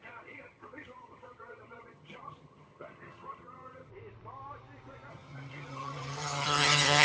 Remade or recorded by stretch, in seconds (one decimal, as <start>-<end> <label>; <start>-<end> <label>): 0.0-3.9 remade; 3.9-5.1 recorded; 5.1-7.0 remade